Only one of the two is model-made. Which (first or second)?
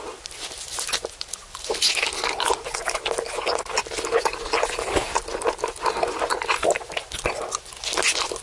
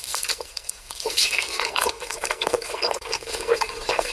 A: second